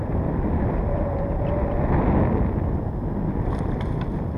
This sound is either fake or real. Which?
real